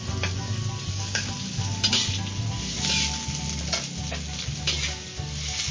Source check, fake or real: real